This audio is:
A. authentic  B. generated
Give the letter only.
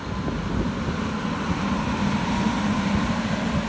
A